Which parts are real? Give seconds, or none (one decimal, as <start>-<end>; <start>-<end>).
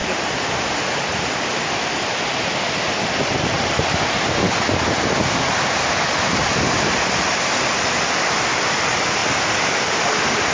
1.9-10.5